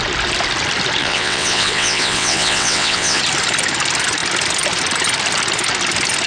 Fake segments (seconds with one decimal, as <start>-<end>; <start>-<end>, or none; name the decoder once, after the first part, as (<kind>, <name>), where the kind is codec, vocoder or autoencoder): 1.0-3.2 (vocoder, WaveNeXt)